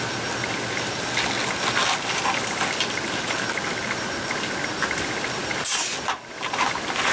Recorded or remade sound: recorded